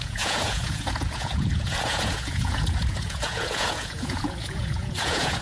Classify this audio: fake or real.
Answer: fake